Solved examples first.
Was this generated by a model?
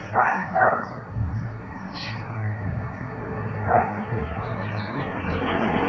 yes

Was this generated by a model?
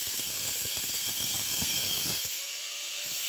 yes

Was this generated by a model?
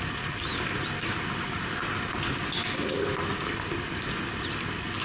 no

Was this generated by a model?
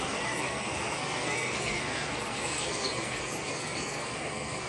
yes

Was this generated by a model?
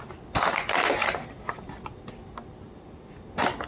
no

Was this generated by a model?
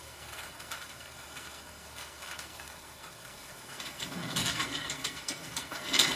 yes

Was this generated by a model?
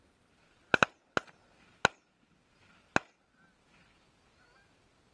no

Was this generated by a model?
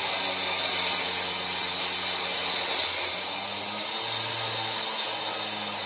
no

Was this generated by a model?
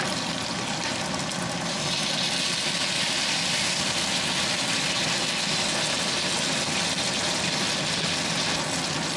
no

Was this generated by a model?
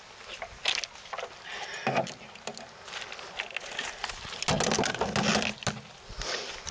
no